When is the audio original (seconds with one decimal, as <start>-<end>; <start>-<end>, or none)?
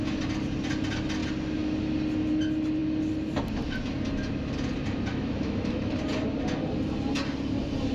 0.0-5.1; 5.9-7.9